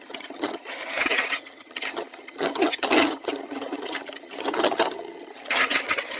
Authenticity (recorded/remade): remade